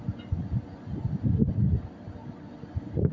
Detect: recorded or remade recorded